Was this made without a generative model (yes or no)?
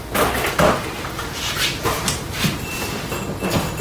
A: yes